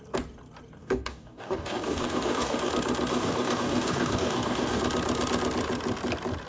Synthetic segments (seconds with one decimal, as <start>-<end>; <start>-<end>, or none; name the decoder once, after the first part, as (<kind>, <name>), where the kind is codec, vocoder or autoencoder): 0.8-2.7 (codec, DAC); 3.1-4.8